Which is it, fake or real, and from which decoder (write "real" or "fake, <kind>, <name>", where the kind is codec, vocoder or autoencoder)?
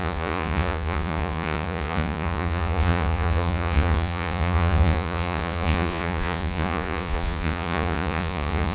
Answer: fake, vocoder, Vocos